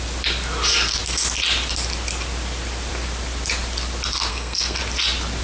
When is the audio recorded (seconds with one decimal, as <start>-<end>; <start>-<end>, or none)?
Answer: 0.0-4.3; 4.8-5.4